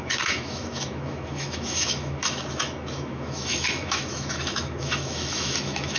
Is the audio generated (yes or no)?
yes